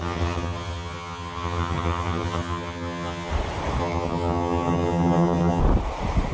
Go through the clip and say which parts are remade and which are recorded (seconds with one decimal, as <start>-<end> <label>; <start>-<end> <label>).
0.0-3.3 remade; 3.3-3.8 recorded; 3.8-5.6 remade; 5.6-6.3 recorded